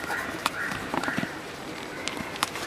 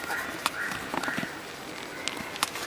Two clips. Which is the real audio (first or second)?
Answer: second